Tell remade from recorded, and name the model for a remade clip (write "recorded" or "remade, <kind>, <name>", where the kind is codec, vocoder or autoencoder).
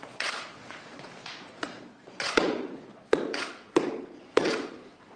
remade, vocoder, Vocos